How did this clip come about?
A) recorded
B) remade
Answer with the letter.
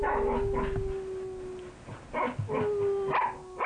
A